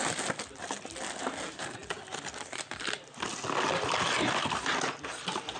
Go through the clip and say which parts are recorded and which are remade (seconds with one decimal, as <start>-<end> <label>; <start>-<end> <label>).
0.0-5.6 recorded